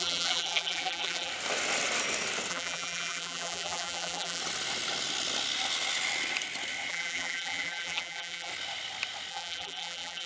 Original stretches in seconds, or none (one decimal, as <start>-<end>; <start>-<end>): 1.3-2.5; 4.4-6.9; 8.5-9.3